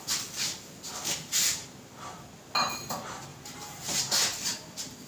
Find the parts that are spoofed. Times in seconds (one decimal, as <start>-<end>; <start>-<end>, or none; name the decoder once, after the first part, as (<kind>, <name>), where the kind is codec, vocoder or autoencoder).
3.3-4.0 (vocoder, BigVGAN v2)